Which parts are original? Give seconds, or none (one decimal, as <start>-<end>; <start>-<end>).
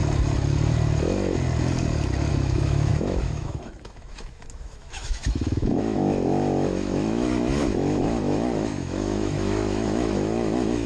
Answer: 0.0-2.3